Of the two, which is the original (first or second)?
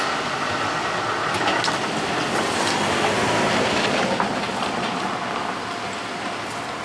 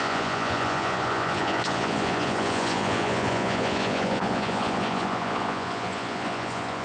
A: first